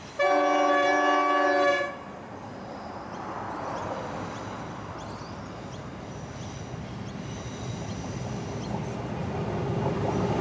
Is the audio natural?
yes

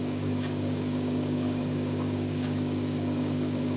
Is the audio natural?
no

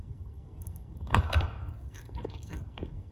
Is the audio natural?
no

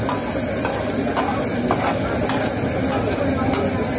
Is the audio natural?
yes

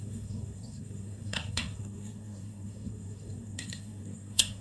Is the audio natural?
no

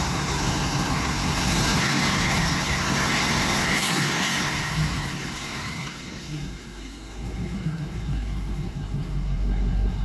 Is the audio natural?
no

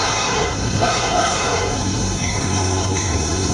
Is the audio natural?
no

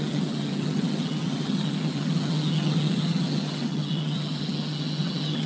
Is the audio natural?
no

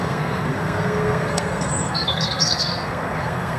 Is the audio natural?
no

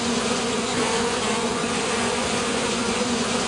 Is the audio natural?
no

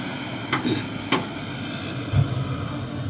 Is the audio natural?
yes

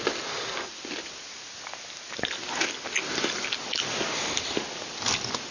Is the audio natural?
yes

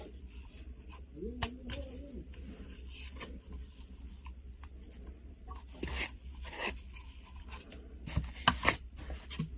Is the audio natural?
yes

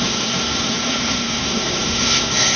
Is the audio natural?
no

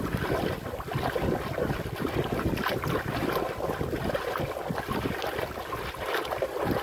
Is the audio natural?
yes